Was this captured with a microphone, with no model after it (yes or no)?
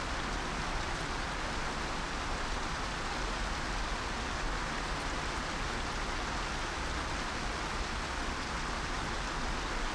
yes